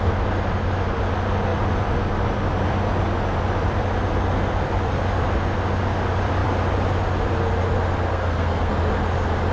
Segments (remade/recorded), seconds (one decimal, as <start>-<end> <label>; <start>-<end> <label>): 0.0-8.1 recorded; 8.1-8.7 remade; 8.7-9.5 recorded